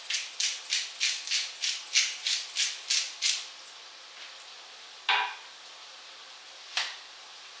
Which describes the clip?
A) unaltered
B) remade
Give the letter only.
A